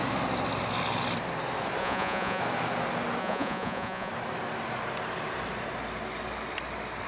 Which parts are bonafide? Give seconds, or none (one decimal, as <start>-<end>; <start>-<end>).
0.0-1.8; 2.4-3.2; 4.1-7.1